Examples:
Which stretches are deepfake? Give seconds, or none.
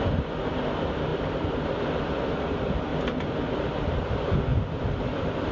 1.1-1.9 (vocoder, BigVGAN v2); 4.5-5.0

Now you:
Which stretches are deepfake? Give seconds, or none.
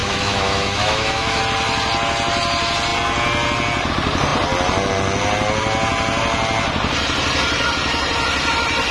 0.0-1.4 (autoencoder, DAC-VAE)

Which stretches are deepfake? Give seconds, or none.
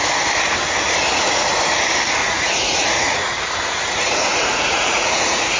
1.1-1.7 (vocoder, Vocos); 2.2-5.6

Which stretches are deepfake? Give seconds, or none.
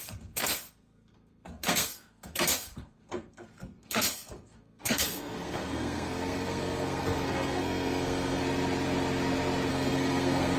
0.0-8.4 (codec, SNAC); 9.7-10.6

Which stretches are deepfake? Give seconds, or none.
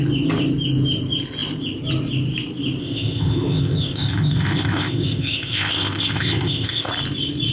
2.8-6.9 (codec, ZipCodec)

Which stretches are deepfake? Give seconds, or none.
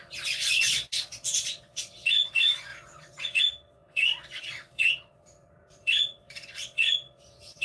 0.0-7.6 (vocoder, Vocos)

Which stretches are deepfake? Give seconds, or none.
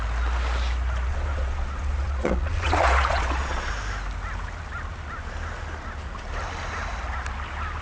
1.1-3.7 (vocoder, Vocos)